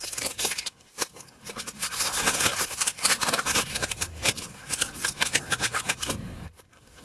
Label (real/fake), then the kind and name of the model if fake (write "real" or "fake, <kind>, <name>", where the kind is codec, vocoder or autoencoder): fake, codec, SNAC